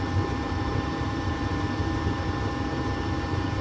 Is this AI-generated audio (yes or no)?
yes